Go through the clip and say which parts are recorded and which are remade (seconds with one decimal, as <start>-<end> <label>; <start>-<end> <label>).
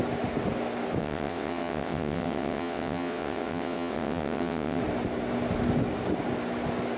0.0-1.0 recorded; 1.0-4.8 remade; 4.8-7.0 recorded